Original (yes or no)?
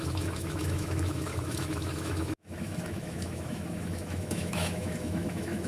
no